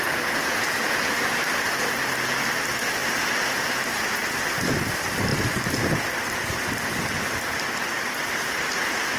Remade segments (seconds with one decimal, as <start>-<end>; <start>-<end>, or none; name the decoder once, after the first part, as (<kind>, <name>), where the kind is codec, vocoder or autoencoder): none